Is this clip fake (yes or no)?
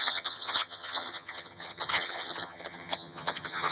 yes